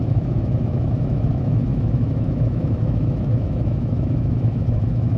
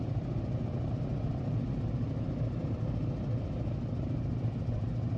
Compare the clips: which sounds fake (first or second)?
first